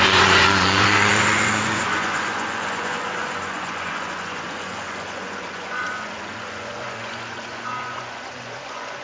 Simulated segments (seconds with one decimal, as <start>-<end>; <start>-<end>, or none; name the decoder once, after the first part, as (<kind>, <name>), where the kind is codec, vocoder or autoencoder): 0.0-9.0 (vocoder, Vocos)